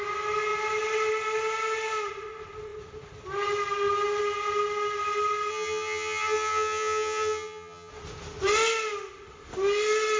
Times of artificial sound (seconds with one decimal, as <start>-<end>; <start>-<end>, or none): 5.5-7.9